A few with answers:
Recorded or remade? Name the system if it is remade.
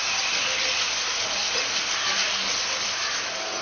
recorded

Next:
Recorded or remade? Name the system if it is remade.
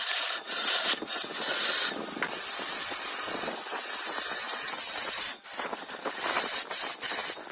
recorded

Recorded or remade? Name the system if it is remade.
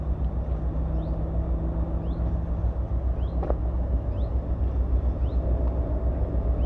recorded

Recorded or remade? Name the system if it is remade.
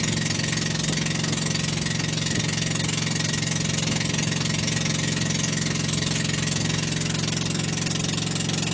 recorded